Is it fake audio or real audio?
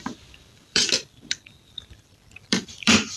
fake